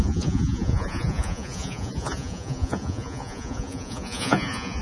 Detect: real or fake fake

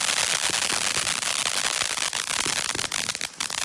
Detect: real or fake real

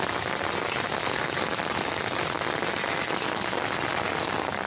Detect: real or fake real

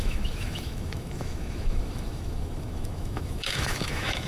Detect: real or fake fake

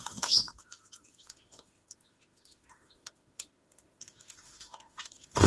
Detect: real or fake fake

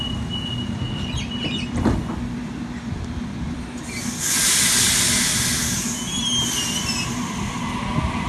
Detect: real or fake real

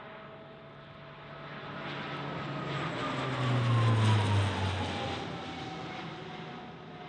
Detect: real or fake real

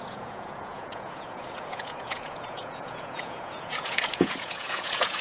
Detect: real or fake fake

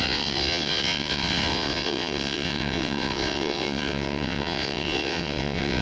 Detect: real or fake fake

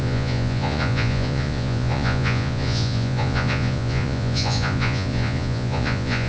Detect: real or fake fake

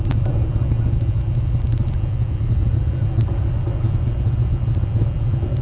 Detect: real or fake real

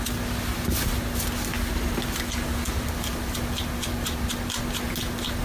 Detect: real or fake real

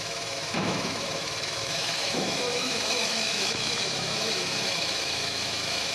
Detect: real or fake fake